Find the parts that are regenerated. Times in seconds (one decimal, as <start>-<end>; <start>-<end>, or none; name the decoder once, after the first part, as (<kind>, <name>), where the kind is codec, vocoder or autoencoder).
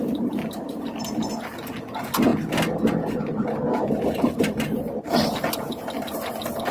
none